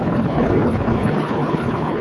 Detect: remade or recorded remade